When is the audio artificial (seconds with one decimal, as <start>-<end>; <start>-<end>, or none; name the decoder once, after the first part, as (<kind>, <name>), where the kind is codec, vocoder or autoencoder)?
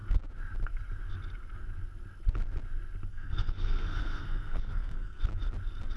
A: 3.1-5.2 (codec, SNAC)